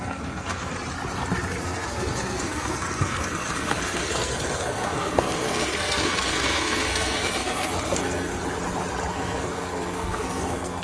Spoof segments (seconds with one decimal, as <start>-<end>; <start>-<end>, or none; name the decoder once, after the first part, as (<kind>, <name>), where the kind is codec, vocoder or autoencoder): 0.0-0.7 (codec, SNAC); 1.6-8.4; 9.1-10.8